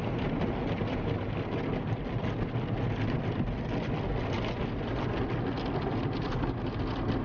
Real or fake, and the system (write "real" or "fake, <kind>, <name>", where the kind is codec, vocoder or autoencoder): real